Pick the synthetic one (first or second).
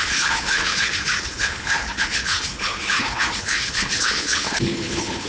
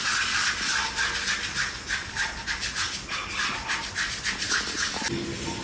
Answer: first